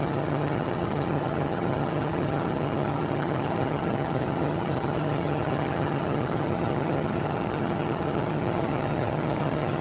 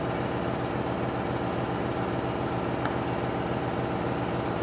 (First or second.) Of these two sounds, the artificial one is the first